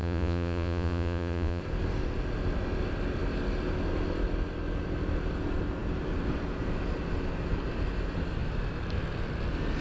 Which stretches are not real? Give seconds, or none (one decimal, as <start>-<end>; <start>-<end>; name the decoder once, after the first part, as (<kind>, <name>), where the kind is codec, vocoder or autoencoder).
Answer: 0.0-1.6 (vocoder, Vocos)